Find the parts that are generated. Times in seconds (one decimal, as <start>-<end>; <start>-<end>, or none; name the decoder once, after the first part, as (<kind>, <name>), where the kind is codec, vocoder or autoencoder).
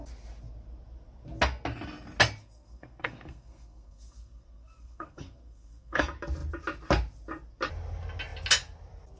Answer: 2.4-6.0 (codec, SNAC)